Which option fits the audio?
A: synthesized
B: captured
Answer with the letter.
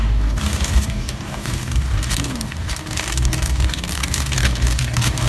A